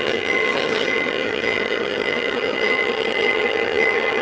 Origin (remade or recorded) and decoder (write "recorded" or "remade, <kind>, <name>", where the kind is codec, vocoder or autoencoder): remade, vocoder, HiFi-GAN